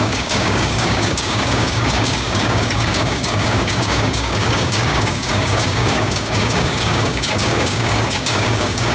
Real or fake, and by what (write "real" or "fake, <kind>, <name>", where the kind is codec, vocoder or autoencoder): fake, codec, DAC